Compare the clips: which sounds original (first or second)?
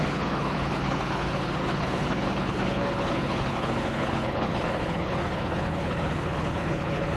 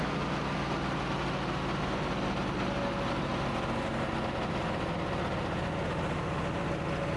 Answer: second